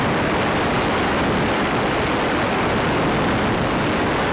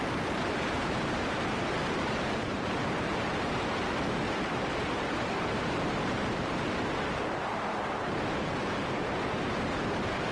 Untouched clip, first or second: first